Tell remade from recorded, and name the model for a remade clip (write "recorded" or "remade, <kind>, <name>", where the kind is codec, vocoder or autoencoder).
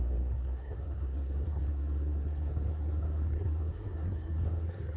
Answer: remade, codec, SNAC